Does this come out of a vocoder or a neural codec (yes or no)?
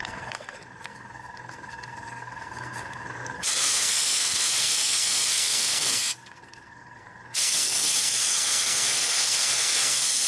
yes